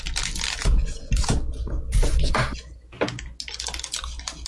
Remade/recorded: recorded